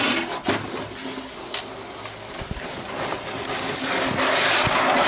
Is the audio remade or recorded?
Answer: recorded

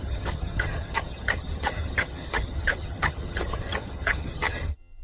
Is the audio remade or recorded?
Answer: remade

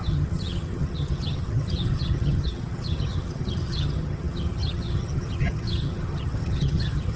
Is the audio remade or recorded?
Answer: remade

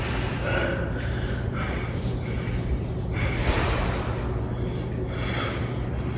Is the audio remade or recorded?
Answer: recorded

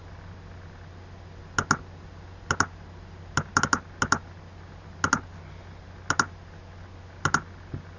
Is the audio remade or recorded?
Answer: recorded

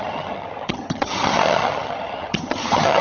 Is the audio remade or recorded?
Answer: remade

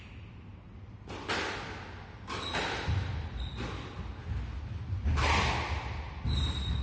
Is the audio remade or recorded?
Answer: recorded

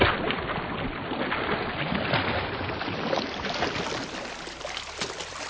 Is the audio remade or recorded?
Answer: recorded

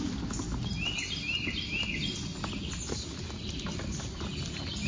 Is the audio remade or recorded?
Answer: recorded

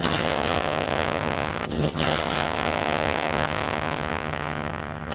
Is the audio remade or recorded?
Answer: remade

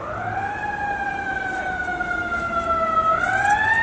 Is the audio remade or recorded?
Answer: recorded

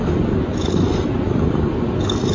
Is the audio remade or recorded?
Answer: recorded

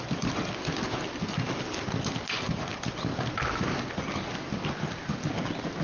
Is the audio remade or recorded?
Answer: recorded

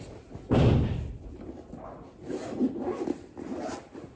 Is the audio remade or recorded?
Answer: recorded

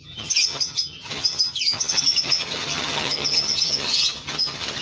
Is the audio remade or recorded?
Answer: remade